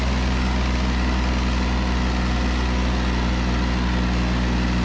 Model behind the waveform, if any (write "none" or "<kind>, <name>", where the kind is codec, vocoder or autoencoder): none